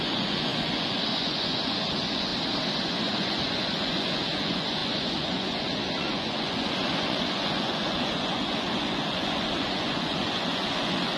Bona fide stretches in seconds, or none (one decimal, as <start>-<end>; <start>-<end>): 2.3-2.9

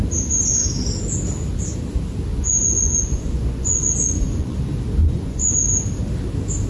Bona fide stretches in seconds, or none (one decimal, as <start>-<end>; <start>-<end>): 0.0-2.3; 4.6-5.0; 5.5-6.7